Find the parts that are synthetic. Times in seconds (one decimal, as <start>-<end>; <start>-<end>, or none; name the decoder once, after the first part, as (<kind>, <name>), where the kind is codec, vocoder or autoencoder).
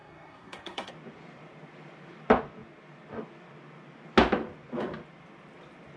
0.0-0.9 (codec, SNAC)